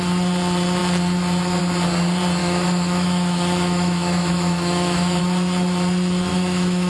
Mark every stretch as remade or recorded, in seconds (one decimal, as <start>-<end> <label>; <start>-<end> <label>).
0.0-2.4 recorded; 2.4-5.2 remade; 5.2-6.3 recorded; 6.3-6.9 remade